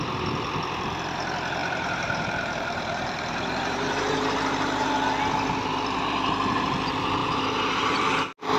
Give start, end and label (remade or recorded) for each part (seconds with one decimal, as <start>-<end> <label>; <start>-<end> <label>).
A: 0.0-1.6 recorded; 1.6-4.9 remade; 4.9-7.2 recorded; 7.2-8.0 remade; 8.0-8.6 recorded